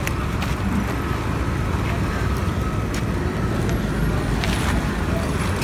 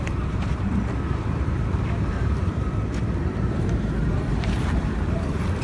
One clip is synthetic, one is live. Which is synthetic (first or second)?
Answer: second